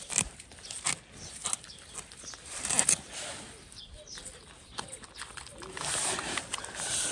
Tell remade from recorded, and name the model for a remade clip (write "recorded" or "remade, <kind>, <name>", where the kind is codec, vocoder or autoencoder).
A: recorded